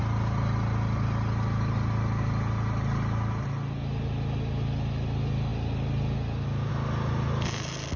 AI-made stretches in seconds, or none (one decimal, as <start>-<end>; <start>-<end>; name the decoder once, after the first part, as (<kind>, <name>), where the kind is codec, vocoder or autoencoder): none